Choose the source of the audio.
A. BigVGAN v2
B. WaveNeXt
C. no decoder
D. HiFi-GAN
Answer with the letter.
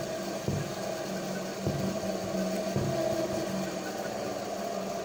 C